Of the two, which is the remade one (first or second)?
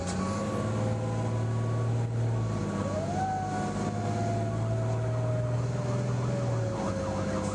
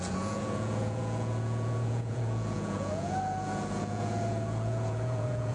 second